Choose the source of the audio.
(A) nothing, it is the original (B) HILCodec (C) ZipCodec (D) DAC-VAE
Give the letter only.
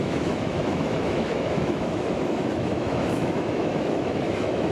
D